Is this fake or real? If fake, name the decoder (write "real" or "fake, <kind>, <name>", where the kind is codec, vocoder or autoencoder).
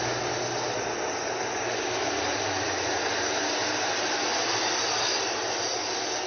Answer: real